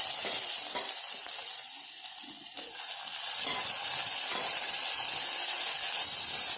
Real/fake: real